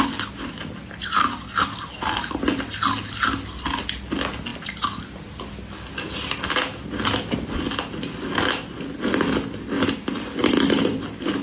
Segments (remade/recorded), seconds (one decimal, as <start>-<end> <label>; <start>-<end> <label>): 0.0-11.4 recorded